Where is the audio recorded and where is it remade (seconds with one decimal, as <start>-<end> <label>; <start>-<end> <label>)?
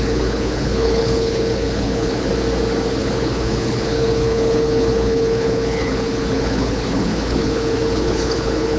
0.0-2.3 remade; 2.3-3.0 recorded; 3.0-8.8 remade